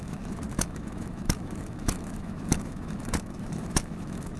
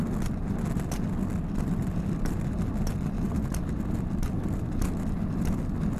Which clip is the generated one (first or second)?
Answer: first